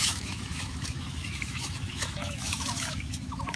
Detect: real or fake fake